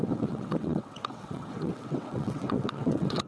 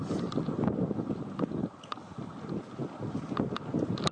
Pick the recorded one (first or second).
second